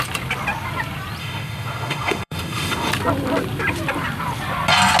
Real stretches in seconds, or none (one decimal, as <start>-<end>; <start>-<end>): 0.0-1.2; 2.9-5.0